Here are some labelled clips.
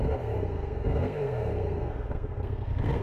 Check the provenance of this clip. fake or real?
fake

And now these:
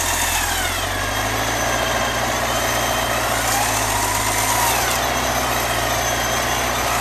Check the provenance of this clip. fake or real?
real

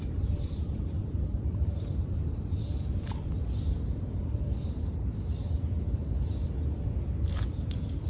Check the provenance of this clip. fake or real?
fake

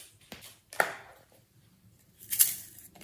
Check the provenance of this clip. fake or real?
real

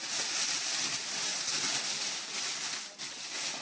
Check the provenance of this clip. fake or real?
real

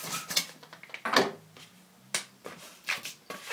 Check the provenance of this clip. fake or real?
real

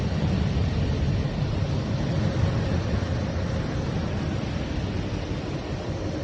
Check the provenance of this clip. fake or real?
real